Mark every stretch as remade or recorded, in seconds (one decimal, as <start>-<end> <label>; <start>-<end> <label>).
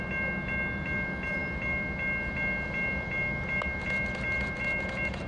0.0-5.3 recorded